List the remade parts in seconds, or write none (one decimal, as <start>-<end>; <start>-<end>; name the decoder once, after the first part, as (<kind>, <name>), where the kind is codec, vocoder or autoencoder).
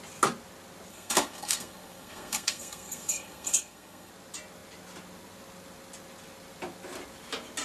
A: 0.9-4.1 (codec, SNAC)